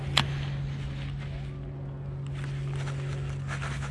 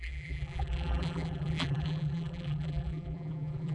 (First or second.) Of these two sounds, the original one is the first